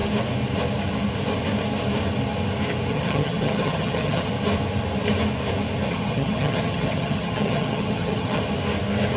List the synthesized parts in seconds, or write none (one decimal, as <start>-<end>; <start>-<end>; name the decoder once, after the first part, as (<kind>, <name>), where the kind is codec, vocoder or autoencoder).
2.9-4.3 (vocoder, HiFi-GAN); 5.9-8.4